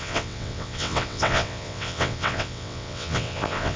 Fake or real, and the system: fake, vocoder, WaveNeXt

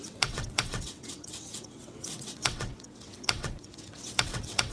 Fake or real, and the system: fake, vocoder, WaveNeXt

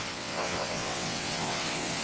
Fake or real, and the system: fake, vocoder, WaveNeXt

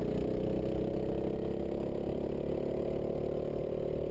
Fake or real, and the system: real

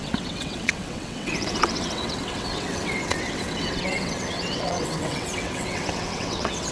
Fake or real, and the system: fake, vocoder, WaveNeXt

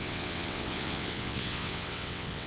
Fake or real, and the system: fake, vocoder, WaveNeXt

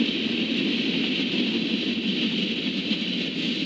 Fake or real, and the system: real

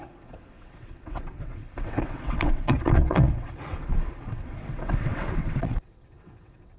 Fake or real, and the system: fake, vocoder, WaveNeXt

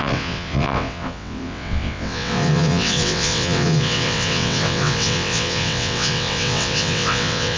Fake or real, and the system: fake, vocoder, WaveNeXt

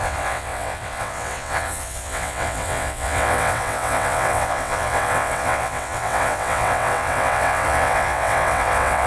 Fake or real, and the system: fake, vocoder, WaveNeXt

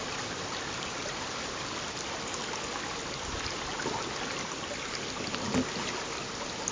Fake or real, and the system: real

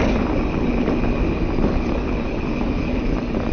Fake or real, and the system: real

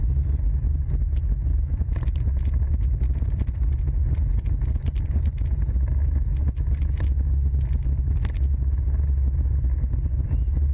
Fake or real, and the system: real